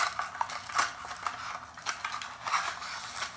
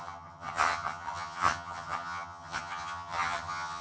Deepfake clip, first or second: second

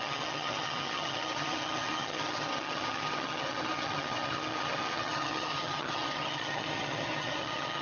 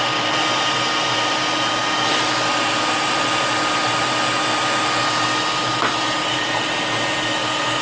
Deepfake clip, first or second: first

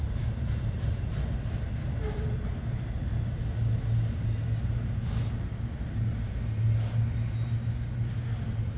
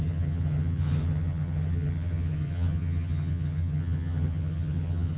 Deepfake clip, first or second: second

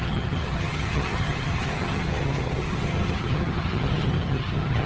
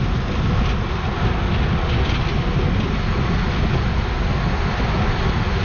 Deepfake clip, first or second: first